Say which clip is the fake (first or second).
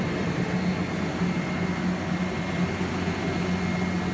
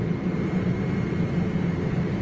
second